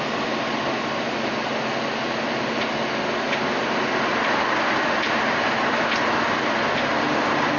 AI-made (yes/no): no